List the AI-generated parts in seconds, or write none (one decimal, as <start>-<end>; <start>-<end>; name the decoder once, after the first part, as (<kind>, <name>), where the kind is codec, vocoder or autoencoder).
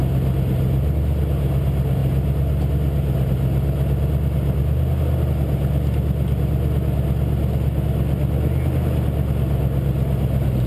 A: none